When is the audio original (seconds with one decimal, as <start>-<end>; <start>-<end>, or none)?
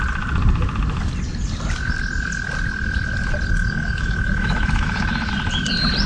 0.0-3.6; 5.3-6.1